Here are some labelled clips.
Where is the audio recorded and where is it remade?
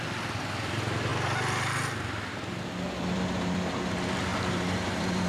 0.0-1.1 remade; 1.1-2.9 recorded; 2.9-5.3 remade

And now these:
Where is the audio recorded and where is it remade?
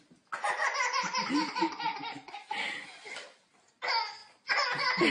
0.0-5.1 recorded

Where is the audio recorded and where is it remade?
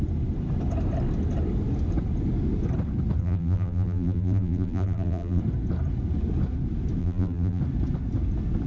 0.0-3.2 recorded; 3.2-5.4 remade; 5.4-7.0 recorded; 7.0-7.6 remade; 7.6-8.7 recorded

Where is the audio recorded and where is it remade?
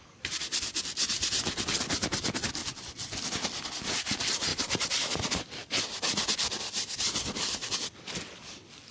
0.0-8.9 remade